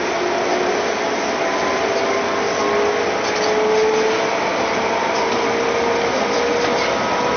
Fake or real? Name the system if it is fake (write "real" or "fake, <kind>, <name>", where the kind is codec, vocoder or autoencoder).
real